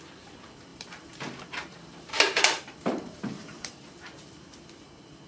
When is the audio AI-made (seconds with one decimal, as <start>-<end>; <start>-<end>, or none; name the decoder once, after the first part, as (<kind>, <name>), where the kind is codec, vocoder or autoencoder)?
0.7-3.9 (vocoder, BigVGAN v2)